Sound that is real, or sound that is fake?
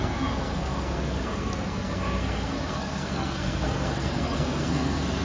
fake